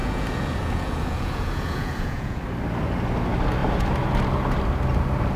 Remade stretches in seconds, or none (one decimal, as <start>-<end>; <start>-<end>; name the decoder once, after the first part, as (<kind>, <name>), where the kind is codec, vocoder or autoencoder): 0.0-2.4 (vocoder, Vocos)